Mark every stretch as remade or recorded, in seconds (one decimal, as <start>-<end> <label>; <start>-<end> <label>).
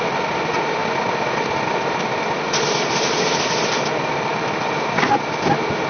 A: 0.0-5.9 recorded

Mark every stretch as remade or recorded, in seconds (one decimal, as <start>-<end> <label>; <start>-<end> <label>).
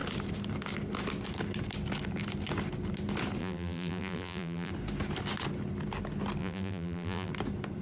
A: 0.0-3.4 recorded; 3.4-4.7 remade; 4.7-6.4 recorded; 6.4-7.3 remade; 7.3-7.8 recorded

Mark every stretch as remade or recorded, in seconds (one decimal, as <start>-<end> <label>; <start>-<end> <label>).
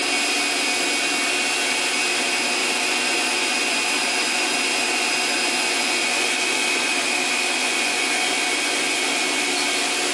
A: 0.0-2.6 recorded; 2.6-6.9 remade; 6.9-7.6 recorded; 7.6-9.4 remade; 9.4-10.1 recorded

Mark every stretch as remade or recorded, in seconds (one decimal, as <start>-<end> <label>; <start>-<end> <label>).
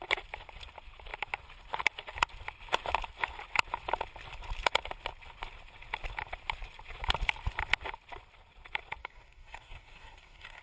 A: 0.0-9.0 recorded; 9.0-10.6 remade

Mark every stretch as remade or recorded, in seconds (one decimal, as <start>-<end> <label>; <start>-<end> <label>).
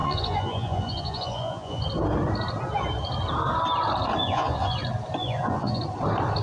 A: 0.0-1.8 remade; 1.8-4.2 recorded; 4.2-4.8 remade; 4.8-5.2 recorded; 5.2-5.8 remade; 5.8-6.4 recorded